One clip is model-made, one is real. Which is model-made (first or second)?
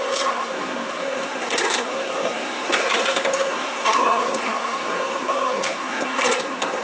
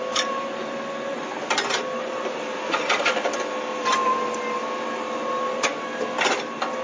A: first